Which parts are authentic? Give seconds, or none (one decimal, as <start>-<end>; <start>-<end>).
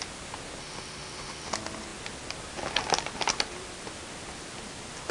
0.0-0.6; 1.5-5.1